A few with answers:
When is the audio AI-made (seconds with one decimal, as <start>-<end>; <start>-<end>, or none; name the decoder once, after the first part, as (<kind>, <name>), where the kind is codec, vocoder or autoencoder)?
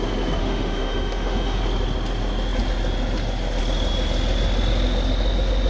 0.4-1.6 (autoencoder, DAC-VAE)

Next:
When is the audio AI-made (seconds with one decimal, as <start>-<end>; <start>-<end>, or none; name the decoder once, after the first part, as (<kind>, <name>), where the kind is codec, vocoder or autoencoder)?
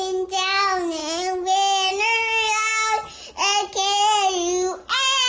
1.0-1.9 (autoencoder, DAC-VAE)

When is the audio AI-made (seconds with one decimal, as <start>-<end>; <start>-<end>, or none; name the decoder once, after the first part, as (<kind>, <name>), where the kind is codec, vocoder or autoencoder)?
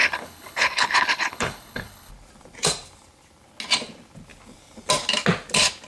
0.0-2.1 (codec, HILCodec)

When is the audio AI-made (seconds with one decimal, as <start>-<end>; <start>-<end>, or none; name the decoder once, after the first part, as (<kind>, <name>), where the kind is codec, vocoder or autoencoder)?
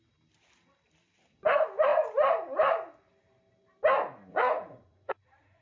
4.3-5.6 (vocoder, Vocos)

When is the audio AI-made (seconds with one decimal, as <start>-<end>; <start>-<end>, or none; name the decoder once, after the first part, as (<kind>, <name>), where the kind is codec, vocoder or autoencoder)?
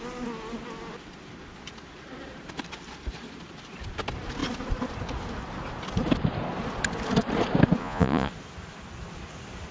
7.8-8.3 (vocoder, Vocos)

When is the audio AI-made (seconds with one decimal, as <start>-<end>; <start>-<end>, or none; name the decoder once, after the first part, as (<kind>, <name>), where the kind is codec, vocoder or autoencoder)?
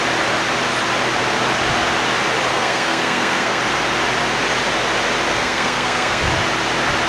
2.5-3.6 (codec, SNAC); 5.3-6.2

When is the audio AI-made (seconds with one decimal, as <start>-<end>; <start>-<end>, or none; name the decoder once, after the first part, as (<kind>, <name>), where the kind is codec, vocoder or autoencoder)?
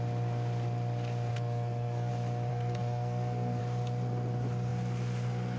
1.3-2.1 (codec, SNAC); 2.5-3.6